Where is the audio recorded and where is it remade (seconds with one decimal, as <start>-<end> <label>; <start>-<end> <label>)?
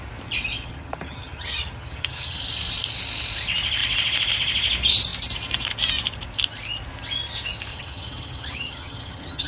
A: 0.0-0.6 recorded; 0.6-2.4 remade; 2.4-7.7 recorded; 7.7-9.5 remade